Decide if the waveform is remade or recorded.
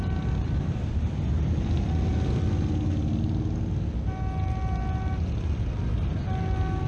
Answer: recorded